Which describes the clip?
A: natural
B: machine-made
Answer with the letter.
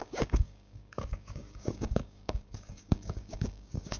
B